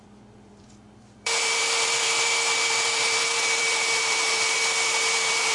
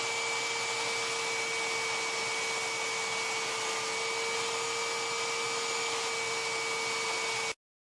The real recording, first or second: second